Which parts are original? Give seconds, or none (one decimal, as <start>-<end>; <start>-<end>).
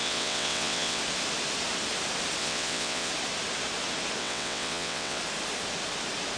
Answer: 1.0-2.4; 3.1-4.2; 5.2-6.4